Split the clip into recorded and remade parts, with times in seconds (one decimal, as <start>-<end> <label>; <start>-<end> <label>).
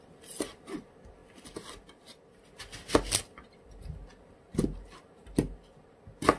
0.0-4.1 recorded; 4.1-5.3 remade; 5.3-6.4 recorded